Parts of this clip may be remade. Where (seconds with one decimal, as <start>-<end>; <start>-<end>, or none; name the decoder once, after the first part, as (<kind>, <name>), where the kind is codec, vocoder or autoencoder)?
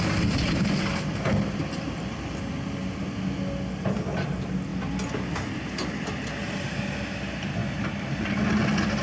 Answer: none